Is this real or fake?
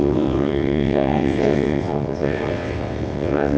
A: fake